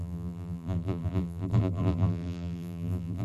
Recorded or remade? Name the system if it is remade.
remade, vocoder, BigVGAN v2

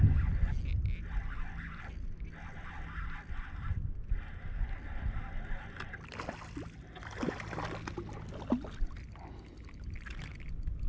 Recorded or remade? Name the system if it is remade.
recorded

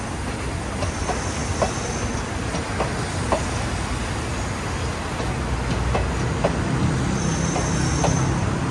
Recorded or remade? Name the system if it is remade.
recorded